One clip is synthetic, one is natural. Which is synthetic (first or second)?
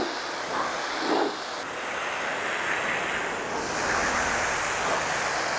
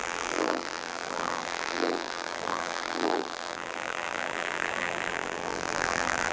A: second